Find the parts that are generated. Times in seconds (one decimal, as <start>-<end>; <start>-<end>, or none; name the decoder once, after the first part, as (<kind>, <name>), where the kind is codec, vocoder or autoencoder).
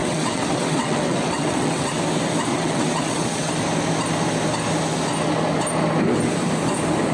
0.0-2.0 (vocoder, WaveNeXt); 2.5-3.5